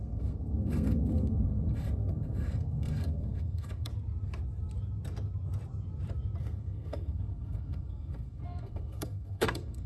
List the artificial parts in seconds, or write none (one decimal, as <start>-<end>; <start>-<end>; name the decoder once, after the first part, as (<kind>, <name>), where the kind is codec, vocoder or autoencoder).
0.0-3.9 (codec, SNAC); 6.4-9.9